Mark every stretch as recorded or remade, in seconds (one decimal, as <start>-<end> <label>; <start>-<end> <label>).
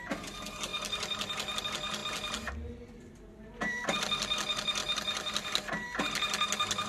0.0-4.8 remade; 4.8-6.9 recorded